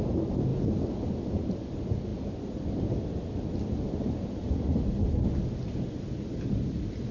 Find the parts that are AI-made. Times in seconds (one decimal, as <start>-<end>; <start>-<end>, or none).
none